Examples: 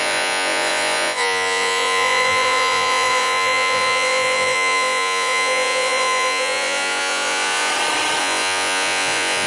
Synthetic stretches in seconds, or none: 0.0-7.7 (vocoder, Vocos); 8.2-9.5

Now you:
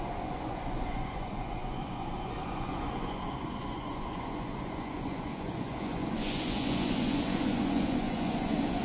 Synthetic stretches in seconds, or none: 0.0-8.8 (vocoder, Vocos)

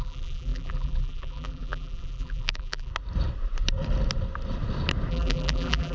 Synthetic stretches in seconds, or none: 0.0-2.9 (vocoder, BigVGAN v2); 5.1-5.9

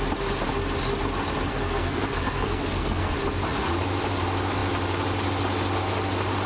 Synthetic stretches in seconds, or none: 1.5-3.1 (codec, SNAC)

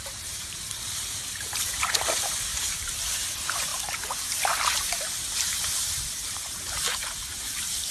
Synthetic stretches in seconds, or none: 0.0-7.9 (vocoder, BigVGAN v2)